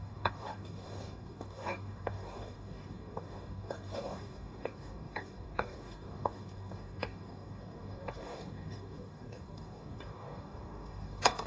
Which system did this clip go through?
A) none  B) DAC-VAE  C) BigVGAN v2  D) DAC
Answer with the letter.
D